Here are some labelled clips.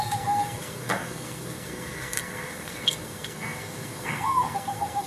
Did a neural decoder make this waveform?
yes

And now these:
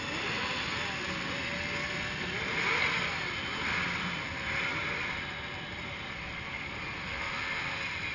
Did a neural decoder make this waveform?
no